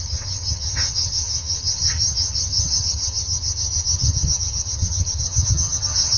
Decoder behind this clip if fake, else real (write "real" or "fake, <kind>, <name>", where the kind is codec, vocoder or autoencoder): fake, vocoder, HiFi-GAN